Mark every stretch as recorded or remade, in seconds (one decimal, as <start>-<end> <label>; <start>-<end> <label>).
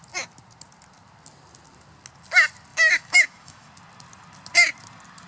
0.0-2.7 recorded; 2.7-3.7 remade; 3.7-5.3 recorded